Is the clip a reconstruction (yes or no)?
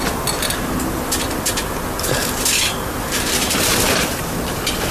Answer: no